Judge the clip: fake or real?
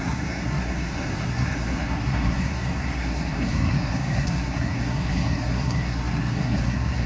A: fake